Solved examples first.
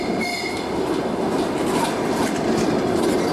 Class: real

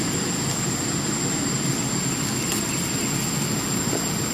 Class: real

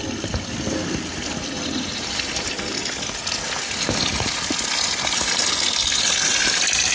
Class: real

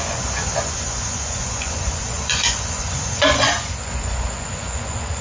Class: fake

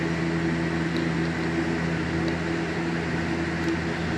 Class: real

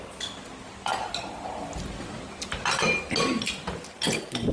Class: real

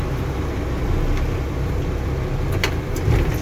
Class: real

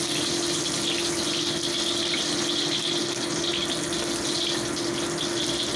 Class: real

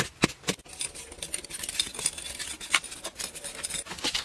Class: real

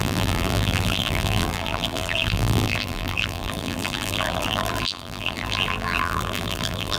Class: fake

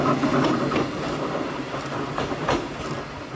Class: real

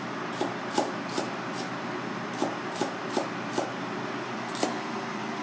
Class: real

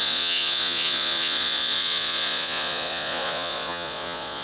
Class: fake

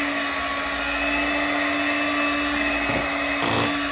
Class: real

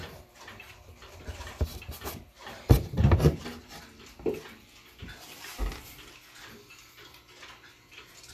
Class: fake